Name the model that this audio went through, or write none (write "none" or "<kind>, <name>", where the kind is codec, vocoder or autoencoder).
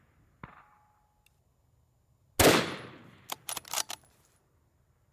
none